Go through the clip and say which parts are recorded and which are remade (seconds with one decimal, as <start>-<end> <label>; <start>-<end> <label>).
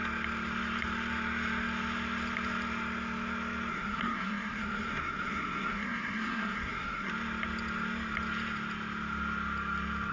0.0-3.7 recorded; 3.7-7.1 remade; 7.1-10.1 recorded